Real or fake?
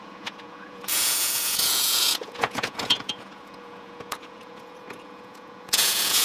fake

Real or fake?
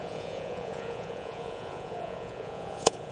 fake